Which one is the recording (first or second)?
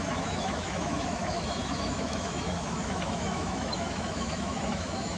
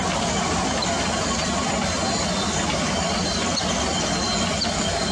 second